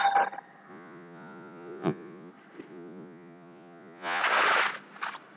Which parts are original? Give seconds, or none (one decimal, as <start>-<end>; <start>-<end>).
0.0-0.7; 2.3-2.7; 4.2-5.4